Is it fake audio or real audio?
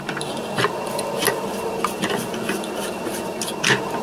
real